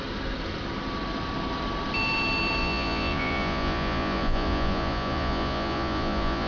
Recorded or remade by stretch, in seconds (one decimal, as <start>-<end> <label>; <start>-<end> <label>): 0.0-2.6 recorded; 2.6-6.5 remade